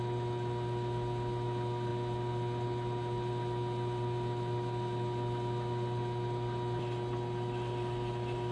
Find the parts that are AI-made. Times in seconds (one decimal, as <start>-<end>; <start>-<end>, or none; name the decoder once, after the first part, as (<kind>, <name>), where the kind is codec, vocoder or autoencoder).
none